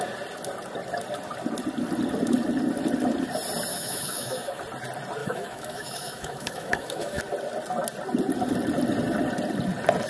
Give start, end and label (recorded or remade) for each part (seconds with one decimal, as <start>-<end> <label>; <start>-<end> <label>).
0.0-3.7 recorded; 3.7-4.6 remade; 4.6-5.2 recorded; 5.2-7.2 remade; 7.2-10.1 recorded